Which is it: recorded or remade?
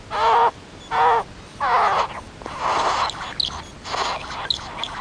recorded